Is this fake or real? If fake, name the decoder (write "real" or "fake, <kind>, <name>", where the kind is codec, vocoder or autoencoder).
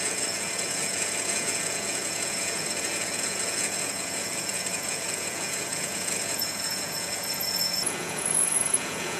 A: fake, vocoder, Vocos